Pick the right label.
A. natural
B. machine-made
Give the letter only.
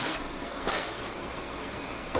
B